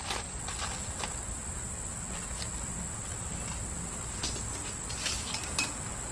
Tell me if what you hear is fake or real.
real